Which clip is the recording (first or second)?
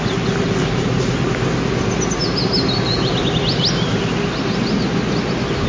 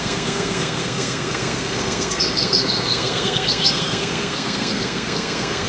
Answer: first